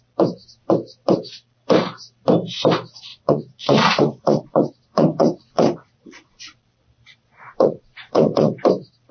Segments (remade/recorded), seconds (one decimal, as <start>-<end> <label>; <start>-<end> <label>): 0.0-3.1 recorded; 3.1-6.4 remade; 6.4-7.1 recorded; 7.1-8.5 remade; 8.5-9.1 recorded